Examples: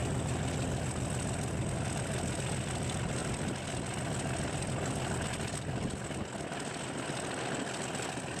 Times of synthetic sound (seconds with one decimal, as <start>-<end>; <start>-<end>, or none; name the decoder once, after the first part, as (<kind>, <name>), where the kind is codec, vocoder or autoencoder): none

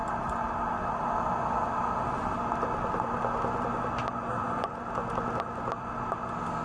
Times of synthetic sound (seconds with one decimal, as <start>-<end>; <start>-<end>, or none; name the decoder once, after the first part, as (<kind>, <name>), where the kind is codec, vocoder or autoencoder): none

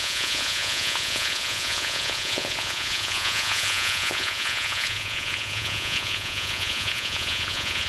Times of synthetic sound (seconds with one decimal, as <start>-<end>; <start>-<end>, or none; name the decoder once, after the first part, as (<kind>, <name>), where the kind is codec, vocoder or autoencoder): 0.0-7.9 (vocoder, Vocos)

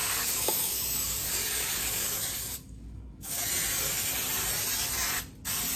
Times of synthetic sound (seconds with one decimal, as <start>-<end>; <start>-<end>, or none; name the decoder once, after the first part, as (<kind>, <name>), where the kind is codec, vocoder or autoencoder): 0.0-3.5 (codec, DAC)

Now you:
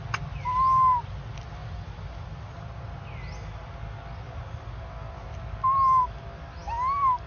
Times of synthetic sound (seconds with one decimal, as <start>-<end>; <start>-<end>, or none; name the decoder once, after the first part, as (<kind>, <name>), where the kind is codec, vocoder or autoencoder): none

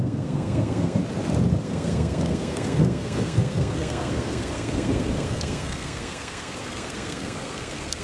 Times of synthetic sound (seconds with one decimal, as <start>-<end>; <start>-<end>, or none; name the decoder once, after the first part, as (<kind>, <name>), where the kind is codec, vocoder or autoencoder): 0.0-1.0 (codec, SNAC); 1.6-8.0